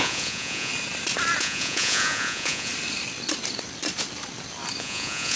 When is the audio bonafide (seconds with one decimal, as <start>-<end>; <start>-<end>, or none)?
0.7-1.4; 2.7-4.8